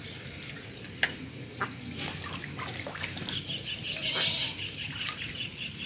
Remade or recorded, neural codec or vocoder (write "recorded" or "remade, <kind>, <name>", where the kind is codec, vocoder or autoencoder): recorded